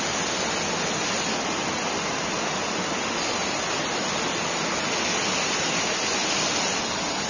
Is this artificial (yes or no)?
no